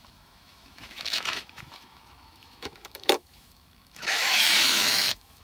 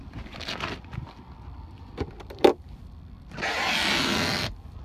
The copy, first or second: first